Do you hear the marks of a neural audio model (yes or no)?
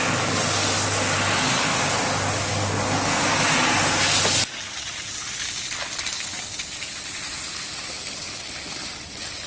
no